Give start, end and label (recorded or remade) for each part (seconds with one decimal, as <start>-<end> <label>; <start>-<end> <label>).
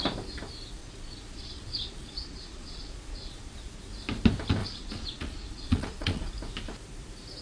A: 0.0-0.8 recorded; 0.8-3.8 remade; 3.8-4.6 recorded; 4.6-6.3 remade; 6.3-7.4 recorded